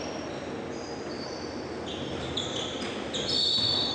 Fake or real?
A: real